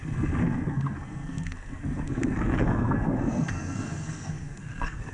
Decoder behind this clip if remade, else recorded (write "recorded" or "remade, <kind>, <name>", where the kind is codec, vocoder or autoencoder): remade, codec, SNAC